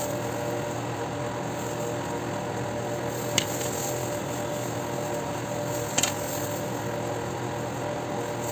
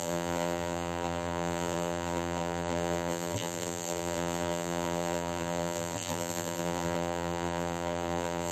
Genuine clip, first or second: first